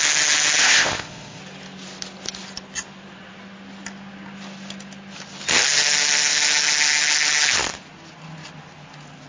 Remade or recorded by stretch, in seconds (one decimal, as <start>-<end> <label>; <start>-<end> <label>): 0.0-0.6 recorded; 0.6-1.4 remade; 1.4-9.3 recorded